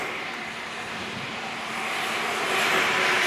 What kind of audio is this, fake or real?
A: real